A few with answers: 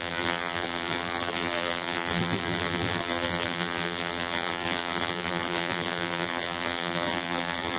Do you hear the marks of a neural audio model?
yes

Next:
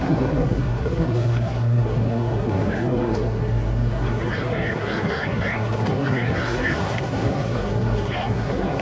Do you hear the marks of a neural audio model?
yes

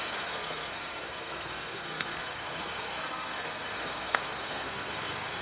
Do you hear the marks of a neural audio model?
yes